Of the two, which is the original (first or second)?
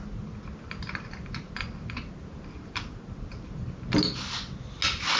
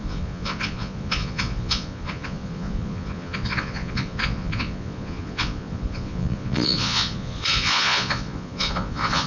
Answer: first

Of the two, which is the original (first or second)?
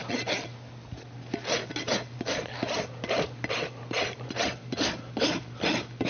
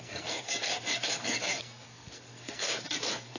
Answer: first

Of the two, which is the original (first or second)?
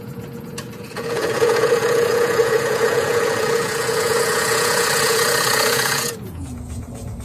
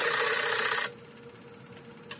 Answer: second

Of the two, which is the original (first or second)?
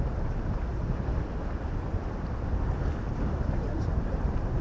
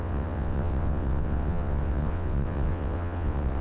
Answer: first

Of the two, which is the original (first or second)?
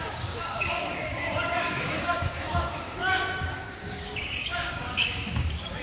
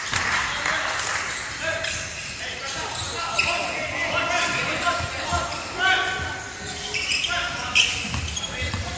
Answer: second